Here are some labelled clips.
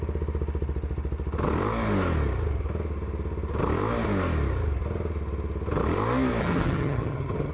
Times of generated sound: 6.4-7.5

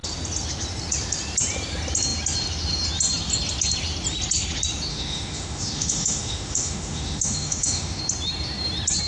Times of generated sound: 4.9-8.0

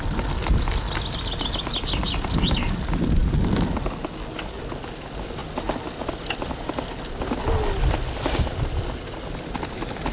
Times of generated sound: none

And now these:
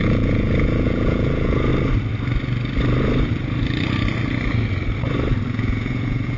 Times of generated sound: 0.0-1.7; 5.5-6.4

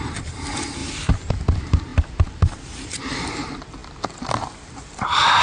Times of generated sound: none